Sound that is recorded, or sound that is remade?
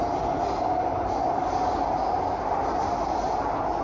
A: recorded